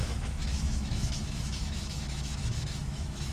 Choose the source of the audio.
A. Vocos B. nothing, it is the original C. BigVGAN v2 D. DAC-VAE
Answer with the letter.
D